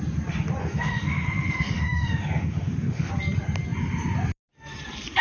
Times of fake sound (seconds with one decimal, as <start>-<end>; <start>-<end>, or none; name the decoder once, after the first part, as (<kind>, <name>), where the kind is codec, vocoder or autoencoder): 0.6-3.1 (autoencoder, DAC-VAE)